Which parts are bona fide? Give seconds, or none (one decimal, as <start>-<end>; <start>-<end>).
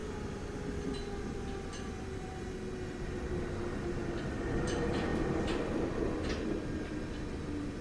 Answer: 0.0-7.8